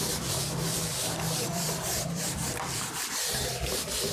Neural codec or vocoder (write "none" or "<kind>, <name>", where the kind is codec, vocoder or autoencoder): vocoder, BigVGAN v2